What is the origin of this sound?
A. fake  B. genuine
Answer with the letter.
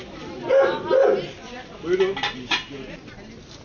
B